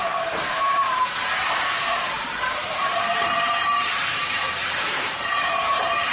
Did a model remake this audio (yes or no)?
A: yes